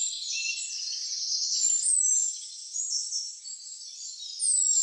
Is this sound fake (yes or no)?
yes